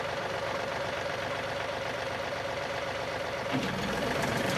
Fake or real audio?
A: fake